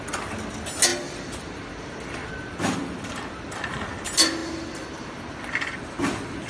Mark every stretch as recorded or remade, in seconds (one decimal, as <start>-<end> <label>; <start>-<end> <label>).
0.0-6.5 recorded